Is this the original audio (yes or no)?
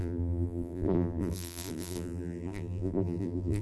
no